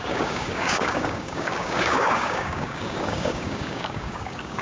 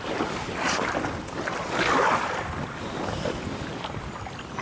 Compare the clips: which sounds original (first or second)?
second